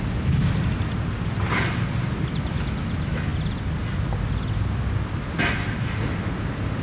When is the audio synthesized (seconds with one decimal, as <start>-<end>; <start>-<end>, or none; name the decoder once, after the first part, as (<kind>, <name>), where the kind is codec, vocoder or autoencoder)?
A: none